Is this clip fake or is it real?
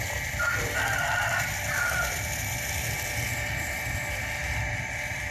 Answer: real